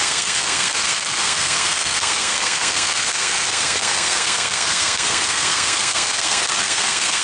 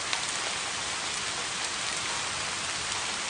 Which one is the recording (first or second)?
second